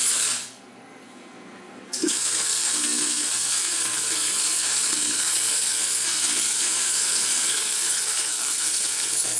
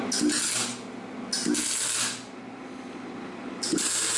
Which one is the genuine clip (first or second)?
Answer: second